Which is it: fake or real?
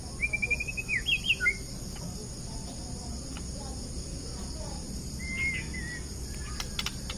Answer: real